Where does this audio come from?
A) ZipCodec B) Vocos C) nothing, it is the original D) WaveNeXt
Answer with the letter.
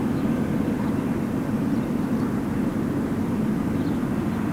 C